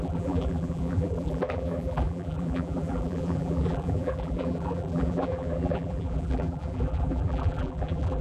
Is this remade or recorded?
remade